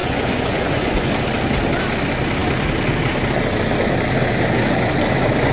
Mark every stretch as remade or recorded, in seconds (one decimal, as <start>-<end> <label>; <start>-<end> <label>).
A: 0.0-1.1 remade; 1.1-5.5 recorded